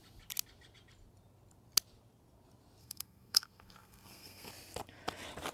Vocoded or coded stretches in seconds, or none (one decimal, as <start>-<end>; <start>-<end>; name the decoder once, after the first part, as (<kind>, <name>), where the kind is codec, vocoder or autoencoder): 2.8-4.5 (codec, SNAC)